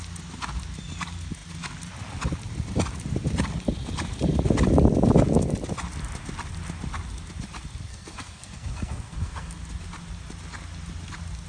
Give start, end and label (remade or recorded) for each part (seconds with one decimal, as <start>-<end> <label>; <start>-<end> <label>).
0.0-7.9 recorded; 7.9-9.6 remade; 9.6-11.5 recorded

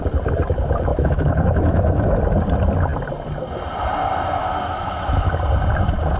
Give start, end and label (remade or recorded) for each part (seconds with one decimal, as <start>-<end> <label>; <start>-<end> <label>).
0.0-0.9 recorded; 0.9-2.2 remade; 2.2-4.4 recorded; 4.4-5.3 remade; 5.3-6.2 recorded